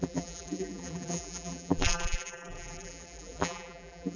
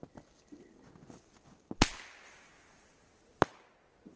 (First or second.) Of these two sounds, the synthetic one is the first